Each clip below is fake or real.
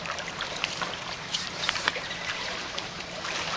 fake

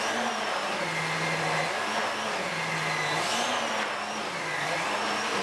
real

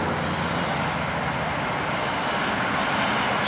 real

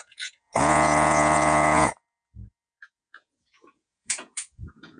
fake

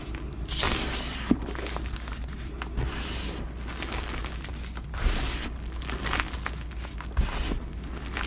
real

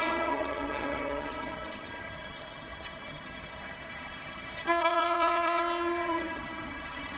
fake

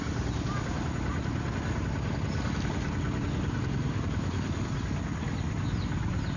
real